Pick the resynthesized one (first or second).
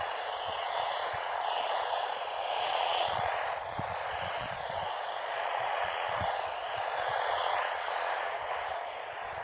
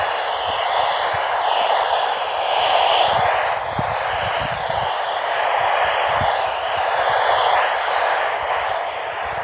first